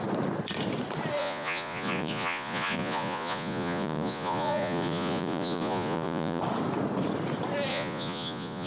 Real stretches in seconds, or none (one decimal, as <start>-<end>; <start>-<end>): 0.0-1.2; 6.4-7.7